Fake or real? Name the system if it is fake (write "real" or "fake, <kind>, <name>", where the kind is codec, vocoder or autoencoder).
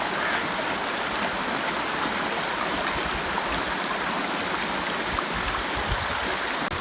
real